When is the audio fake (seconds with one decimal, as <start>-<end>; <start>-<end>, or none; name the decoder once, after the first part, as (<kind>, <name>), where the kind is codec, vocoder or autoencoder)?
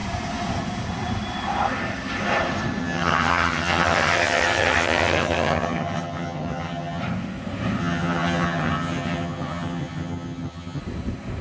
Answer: 2.8-7.0 (vocoder, HiFi-GAN); 7.8-10.8